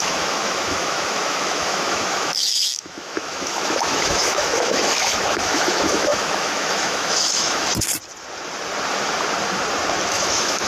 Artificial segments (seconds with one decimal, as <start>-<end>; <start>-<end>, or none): 0.0-7.7; 10.1-10.7